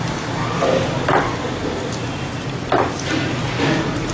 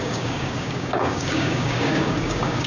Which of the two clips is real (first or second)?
first